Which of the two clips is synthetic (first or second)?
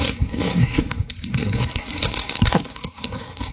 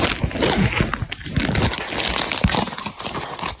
first